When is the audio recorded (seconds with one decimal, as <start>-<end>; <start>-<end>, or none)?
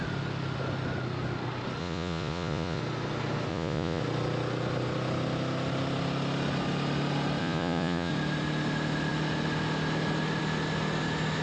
0.0-1.8; 2.8-3.5; 4.0-7.4; 8.1-11.4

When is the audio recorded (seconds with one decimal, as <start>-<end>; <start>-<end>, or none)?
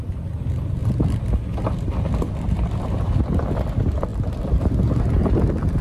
0.8-1.9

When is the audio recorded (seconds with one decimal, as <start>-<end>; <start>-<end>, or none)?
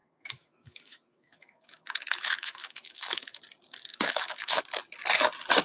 3.4-3.9; 4.6-5.6